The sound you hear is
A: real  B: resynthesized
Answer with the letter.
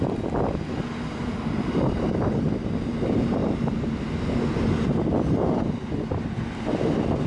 A